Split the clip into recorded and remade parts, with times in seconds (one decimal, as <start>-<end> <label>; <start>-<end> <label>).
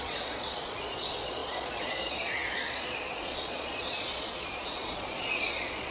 0.0-5.9 remade